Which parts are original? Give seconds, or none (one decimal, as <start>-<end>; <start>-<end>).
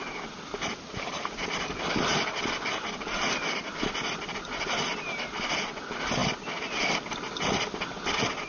0.0-8.5